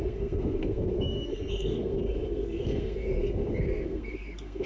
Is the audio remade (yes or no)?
yes